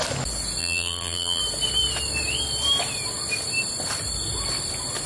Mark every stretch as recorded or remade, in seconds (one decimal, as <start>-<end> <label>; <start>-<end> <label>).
0.0-0.6 recorded; 0.6-1.4 remade; 1.4-5.1 recorded